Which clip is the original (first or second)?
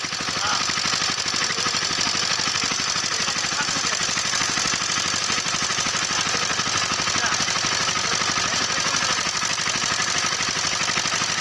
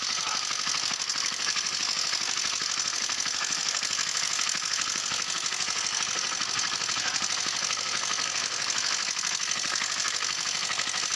first